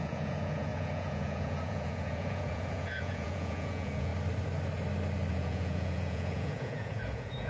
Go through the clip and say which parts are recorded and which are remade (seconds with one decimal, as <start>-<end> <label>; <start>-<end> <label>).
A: 0.0-4.1 remade; 4.1-5.3 recorded; 5.3-7.5 remade